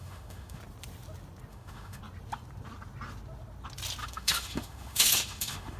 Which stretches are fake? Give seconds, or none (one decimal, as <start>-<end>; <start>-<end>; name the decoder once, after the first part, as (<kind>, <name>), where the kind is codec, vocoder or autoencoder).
0.0-0.6 (autoencoder, DAC-VAE); 1.5-2.0; 4.0-5.8